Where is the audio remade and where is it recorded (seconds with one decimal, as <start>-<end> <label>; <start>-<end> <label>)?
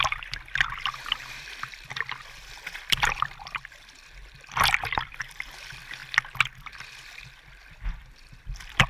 0.0-6.0 remade; 6.0-7.9 recorded; 7.9-8.9 remade